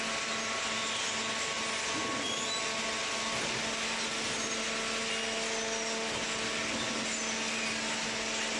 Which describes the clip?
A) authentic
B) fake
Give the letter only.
A